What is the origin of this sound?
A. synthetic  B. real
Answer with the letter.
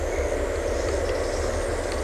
B